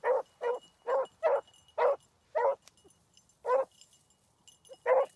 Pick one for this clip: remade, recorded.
recorded